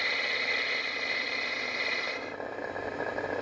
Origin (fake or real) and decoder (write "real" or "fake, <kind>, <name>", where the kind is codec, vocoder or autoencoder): real